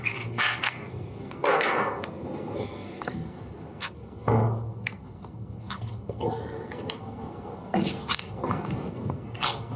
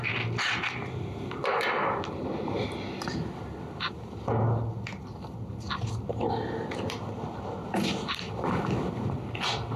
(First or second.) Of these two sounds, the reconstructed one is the first